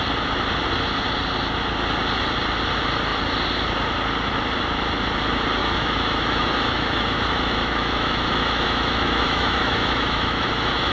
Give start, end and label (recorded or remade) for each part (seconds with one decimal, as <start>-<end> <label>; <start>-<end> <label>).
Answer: 0.0-5.6 recorded; 5.6-10.9 remade